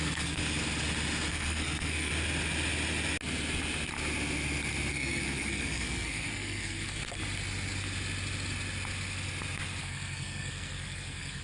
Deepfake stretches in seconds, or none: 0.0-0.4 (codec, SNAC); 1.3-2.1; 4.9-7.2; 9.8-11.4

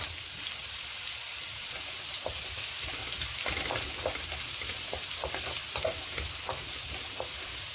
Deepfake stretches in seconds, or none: none

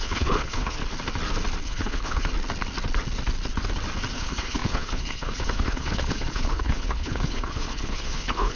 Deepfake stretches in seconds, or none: 0.0-0.8 (codec, HILCodec); 1.6-2.3; 4.1-8.6